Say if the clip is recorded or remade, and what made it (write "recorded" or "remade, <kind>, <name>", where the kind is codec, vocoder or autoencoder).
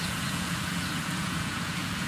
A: remade, vocoder, Vocos